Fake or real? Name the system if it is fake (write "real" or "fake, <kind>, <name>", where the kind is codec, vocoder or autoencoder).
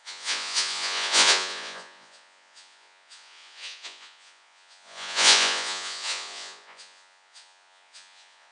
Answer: fake, vocoder, Vocos